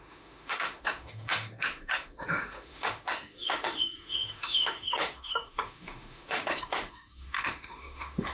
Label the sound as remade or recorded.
remade